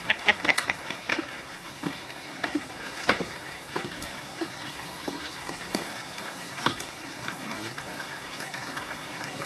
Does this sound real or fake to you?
fake